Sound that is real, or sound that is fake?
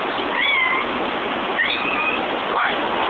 real